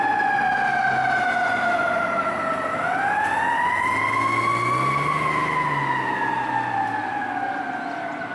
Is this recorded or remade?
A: recorded